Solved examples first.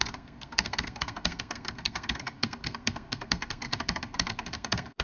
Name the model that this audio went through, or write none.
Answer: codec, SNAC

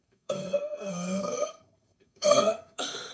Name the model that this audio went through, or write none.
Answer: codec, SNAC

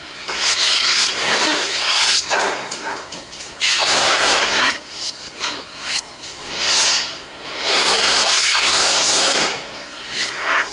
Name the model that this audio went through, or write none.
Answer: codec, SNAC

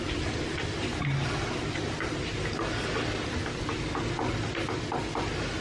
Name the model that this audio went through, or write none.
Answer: none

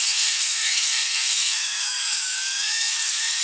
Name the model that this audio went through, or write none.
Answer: codec, SNAC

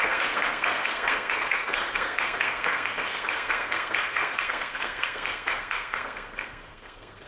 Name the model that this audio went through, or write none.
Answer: codec, SNAC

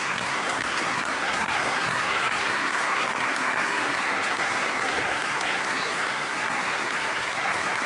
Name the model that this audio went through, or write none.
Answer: codec, SNAC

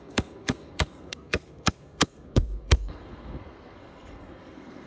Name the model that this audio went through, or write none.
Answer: codec, SNAC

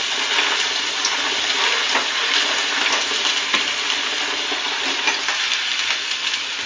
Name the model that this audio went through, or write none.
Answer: none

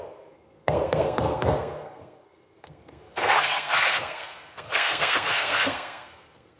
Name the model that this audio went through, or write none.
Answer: codec, SNAC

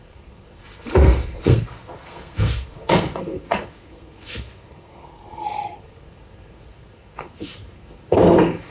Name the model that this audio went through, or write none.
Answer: codec, SNAC